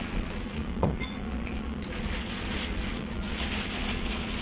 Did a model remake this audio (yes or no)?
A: yes